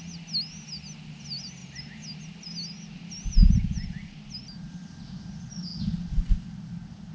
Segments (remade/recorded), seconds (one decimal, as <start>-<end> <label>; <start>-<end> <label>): 0.0-7.1 recorded